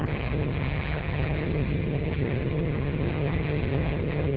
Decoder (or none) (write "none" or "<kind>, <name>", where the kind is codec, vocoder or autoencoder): vocoder, HiFi-GAN